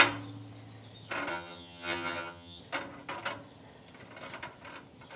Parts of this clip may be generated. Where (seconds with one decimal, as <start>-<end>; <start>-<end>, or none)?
1.3-2.6